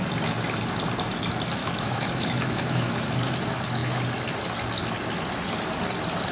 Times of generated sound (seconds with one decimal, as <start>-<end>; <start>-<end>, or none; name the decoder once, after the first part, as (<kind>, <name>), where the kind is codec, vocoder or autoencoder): 1.6-3.1 (autoencoder, DAC-VAE)

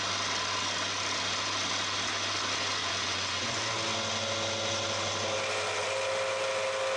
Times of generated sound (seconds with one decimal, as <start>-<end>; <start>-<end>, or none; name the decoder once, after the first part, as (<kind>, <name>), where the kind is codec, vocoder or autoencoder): 2.8-3.6 (vocoder, Vocos)

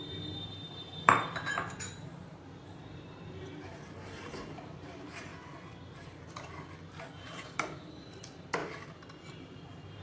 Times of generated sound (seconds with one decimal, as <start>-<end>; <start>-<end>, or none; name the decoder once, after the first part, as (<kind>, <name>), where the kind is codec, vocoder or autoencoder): 0.0-5.3 (vocoder, BigVGAN v2); 7.1-8.6; 9.3-10.0

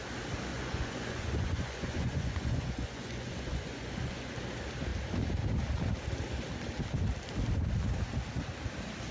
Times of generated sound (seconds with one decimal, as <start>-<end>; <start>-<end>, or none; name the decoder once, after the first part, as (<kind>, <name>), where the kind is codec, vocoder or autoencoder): 0.5-4.3 (vocoder, Vocos)